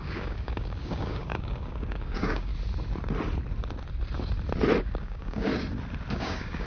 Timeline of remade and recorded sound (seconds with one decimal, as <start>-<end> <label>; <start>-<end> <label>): 0.0-2.5 remade; 2.5-4.8 recorded; 4.8-5.5 remade; 5.5-6.1 recorded; 6.1-6.7 remade

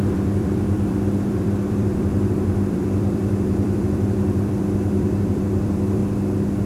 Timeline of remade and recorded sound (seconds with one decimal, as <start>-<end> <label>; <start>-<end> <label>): 0.0-6.0 remade; 6.0-6.7 recorded

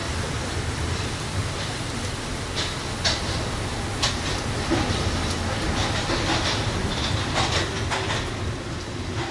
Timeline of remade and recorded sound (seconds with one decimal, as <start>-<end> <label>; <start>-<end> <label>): 0.0-9.3 recorded